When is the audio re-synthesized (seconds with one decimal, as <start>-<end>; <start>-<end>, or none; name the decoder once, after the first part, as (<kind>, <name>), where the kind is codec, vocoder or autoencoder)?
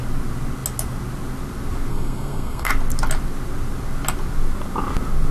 1.9-2.7 (codec, SNAC)